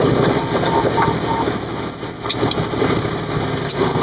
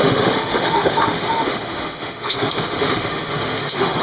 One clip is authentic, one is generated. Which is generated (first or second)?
second